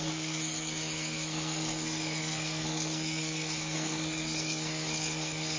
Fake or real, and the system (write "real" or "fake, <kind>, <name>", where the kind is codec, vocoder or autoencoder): fake, codec, SNAC